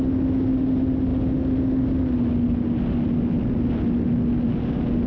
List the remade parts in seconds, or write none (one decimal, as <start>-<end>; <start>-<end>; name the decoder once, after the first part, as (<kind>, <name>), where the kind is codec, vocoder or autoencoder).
none

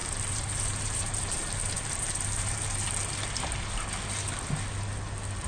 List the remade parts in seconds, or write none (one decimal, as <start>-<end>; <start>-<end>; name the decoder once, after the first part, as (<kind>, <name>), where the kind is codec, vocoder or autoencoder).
0.0-2.9 (vocoder, BigVGAN v2)

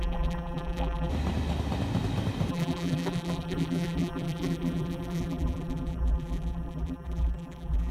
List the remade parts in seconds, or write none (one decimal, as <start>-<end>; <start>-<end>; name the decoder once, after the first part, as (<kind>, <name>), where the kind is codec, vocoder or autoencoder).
0.0-1.1 (vocoder, BigVGAN v2); 2.5-7.9

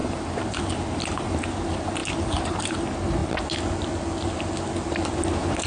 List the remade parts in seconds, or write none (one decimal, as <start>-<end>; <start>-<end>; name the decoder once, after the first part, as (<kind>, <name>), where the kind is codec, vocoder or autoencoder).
0.0-0.6 (vocoder, BigVGAN v2); 2.0-2.8

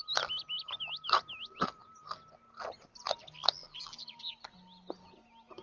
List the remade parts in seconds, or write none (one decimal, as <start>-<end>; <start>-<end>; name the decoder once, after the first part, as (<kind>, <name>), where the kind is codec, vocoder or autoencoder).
3.6-4.3 (vocoder, BigVGAN v2)

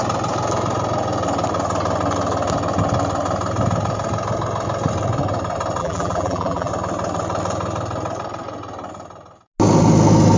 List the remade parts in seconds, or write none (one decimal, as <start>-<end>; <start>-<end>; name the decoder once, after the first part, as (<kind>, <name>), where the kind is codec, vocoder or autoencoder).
5.8-6.7 (vocoder, BigVGAN v2)

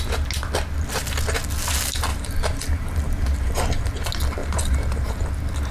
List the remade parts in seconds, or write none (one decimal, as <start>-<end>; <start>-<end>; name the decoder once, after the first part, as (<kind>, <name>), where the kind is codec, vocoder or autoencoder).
2.1-3.9 (vocoder, BigVGAN v2); 4.4-5.3